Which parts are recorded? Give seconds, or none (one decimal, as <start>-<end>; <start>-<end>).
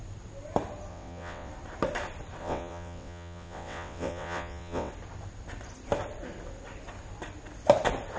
0.0-0.9; 1.5-2.4; 4.9-8.2